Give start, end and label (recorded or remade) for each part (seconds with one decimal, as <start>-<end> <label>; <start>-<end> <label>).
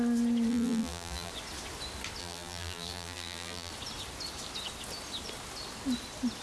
0.0-0.5 recorded; 0.5-1.3 remade; 1.3-2.2 recorded; 2.2-3.7 remade; 3.7-6.4 recorded